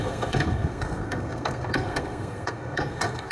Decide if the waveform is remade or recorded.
remade